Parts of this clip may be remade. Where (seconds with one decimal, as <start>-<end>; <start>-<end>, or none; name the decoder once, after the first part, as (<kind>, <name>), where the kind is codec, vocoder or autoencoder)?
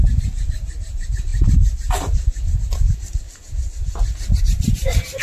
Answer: none